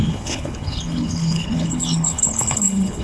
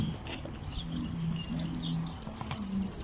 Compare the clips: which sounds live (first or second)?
second